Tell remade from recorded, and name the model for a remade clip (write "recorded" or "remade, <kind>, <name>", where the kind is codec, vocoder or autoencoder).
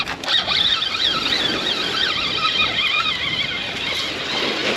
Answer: recorded